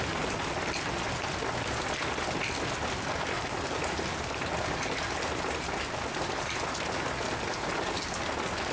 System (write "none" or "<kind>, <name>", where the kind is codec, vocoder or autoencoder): none